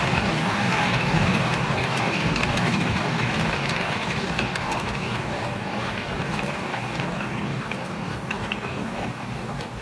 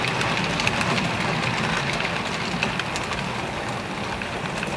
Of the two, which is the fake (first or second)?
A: first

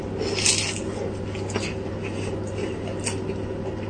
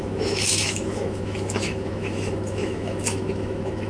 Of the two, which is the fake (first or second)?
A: second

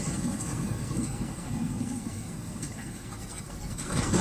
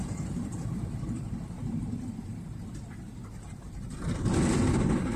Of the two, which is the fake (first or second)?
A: first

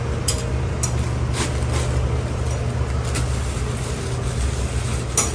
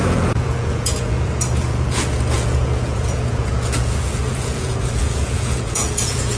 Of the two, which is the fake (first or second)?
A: second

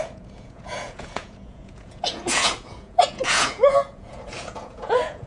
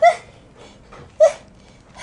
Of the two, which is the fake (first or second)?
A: first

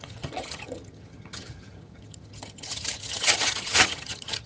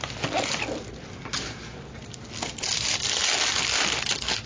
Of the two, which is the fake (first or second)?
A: first